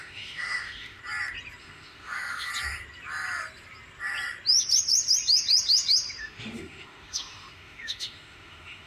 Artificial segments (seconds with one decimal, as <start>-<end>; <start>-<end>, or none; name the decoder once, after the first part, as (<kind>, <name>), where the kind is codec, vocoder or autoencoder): 0.0-1.0 (autoencoder, DAC-VAE); 1.6-2.5; 6.2-8.9